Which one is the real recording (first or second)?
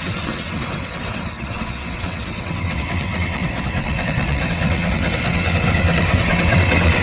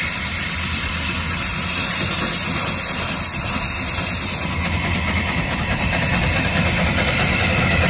second